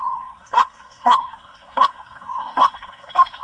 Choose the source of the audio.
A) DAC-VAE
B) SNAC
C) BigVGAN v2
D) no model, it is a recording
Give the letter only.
B